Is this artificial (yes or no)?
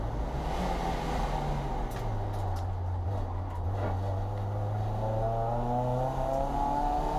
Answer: no